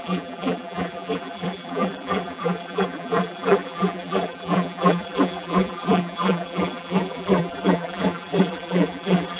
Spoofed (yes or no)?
yes